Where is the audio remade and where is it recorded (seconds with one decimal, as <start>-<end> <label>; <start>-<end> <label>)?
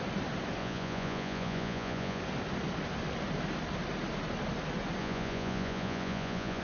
0.0-0.6 recorded; 0.6-2.2 remade; 2.2-5.0 recorded; 5.0-6.6 remade